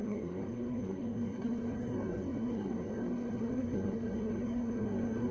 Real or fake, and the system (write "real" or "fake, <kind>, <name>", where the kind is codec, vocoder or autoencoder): fake, codec, SNAC